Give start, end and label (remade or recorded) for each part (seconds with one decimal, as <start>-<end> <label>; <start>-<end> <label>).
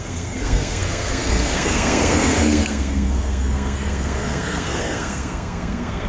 0.0-6.1 remade